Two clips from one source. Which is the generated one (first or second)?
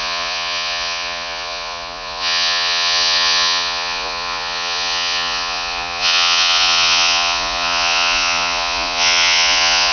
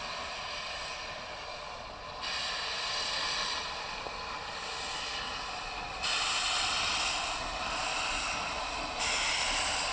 first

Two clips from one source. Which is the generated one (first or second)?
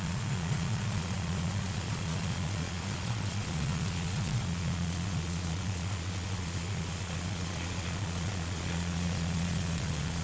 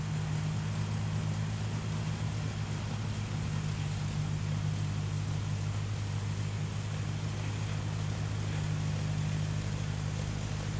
first